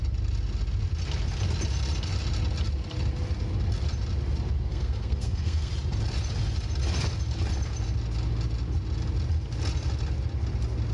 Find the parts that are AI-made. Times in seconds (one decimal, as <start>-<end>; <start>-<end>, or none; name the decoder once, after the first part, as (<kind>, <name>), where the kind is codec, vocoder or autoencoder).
4.7-5.7 (codec, SNAC)